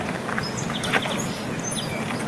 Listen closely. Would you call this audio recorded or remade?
recorded